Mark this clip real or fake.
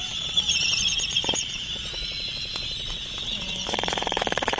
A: fake